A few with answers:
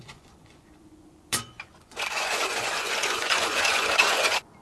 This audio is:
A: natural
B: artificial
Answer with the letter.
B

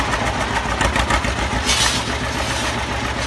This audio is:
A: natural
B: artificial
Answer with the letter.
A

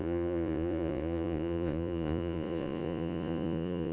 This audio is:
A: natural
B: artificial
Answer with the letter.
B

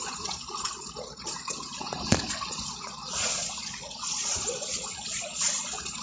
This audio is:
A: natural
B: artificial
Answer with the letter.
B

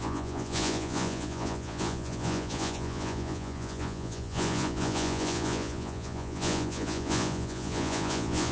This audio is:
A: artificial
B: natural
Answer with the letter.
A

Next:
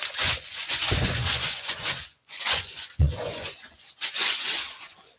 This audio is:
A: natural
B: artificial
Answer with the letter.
B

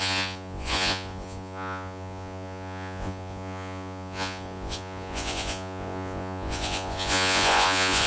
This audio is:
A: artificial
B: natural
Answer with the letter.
A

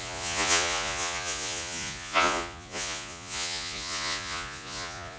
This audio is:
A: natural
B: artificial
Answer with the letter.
B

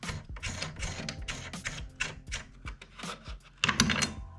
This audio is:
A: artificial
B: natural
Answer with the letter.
B